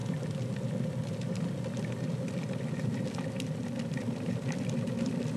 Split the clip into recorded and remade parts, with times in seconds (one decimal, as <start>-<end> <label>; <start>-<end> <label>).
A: 0.0-5.4 recorded